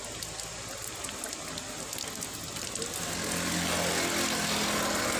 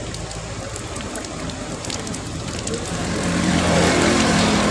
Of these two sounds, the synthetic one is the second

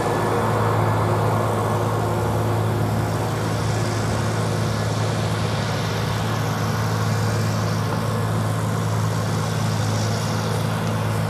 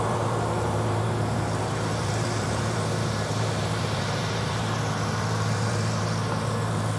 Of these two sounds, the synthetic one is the second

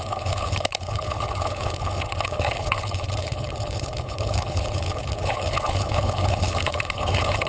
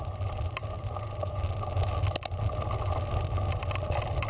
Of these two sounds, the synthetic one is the first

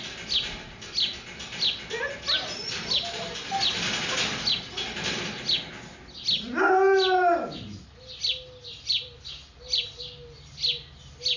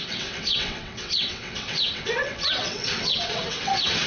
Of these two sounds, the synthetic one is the second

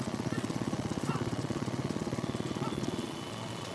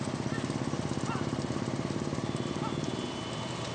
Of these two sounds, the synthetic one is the first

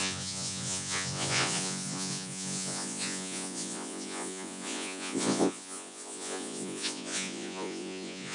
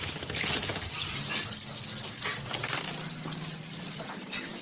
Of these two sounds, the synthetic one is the first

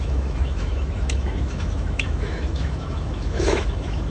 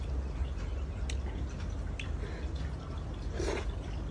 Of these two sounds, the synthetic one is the first